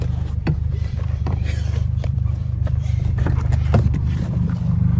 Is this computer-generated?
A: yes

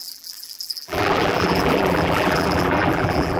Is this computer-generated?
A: yes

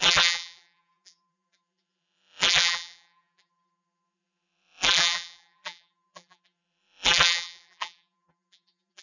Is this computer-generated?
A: yes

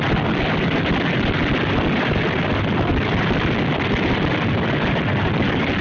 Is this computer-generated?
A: no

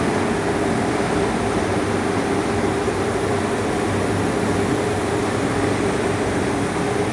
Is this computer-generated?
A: yes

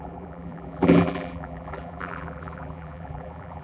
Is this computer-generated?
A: yes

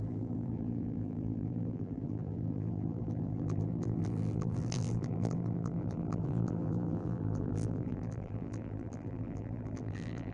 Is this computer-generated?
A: yes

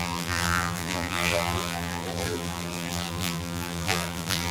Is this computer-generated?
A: yes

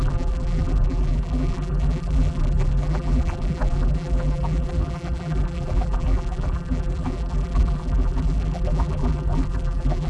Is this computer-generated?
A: yes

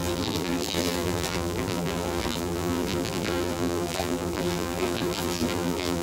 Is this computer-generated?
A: yes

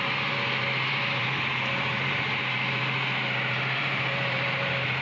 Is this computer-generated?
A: yes